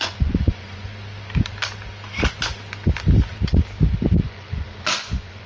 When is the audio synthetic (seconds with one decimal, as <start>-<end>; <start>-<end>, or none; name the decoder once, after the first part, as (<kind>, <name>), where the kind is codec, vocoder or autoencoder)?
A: 0.0-0.9 (vocoder, Vocos); 4.2-5.5